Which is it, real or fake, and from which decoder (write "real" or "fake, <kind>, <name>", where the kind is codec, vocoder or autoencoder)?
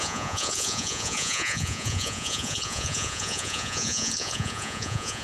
fake, vocoder, Vocos